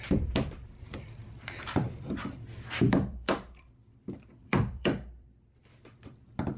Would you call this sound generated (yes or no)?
yes